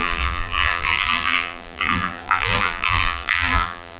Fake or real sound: fake